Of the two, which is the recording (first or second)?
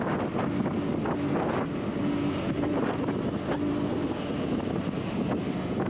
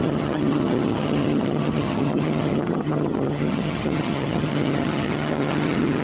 first